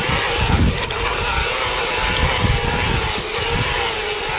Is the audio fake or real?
real